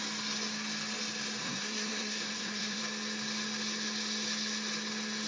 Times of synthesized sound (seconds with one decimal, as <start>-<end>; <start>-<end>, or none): 1.4-2.8